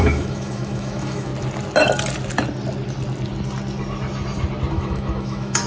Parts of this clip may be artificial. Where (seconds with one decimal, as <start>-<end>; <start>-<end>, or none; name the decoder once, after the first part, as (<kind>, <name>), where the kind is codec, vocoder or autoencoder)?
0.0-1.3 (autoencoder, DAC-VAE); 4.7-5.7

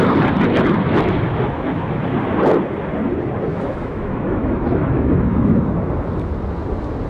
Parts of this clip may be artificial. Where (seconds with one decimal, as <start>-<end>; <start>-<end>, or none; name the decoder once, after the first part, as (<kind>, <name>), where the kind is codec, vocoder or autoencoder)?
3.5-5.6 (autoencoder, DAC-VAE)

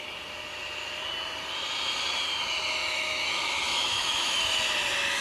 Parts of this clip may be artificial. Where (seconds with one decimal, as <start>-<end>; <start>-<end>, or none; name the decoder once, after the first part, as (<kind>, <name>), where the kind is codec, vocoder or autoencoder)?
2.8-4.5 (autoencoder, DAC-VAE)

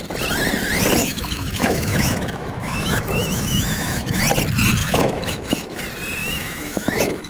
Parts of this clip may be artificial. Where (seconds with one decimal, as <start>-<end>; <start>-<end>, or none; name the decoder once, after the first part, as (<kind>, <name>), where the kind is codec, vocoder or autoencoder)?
1.0-4.2 (autoencoder, DAC-VAE); 4.8-5.8; 6.2-7.3